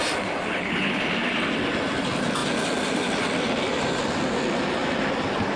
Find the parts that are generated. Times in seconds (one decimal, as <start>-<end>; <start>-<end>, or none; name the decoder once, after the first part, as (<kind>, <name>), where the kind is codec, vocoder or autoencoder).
0.5-1.0 (codec, HILCodec)